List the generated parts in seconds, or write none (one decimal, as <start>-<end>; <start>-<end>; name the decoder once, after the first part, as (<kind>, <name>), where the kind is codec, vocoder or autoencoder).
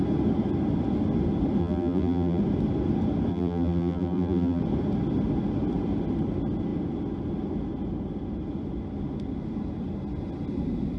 1.6-2.4 (vocoder, BigVGAN v2); 3.3-4.6